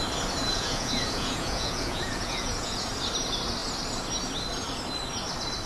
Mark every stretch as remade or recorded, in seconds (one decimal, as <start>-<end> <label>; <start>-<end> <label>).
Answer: 0.0-0.4 recorded; 0.4-2.9 remade; 2.9-5.7 recorded